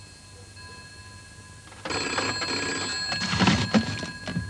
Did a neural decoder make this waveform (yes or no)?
no